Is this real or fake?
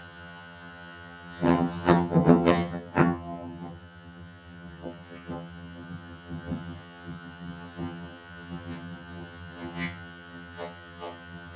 fake